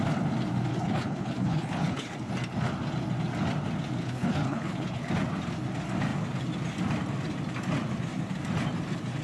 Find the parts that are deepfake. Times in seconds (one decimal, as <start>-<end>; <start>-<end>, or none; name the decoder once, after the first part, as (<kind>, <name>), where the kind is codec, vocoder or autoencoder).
0.7-2.3 (codec, HILCodec); 4.0-5.1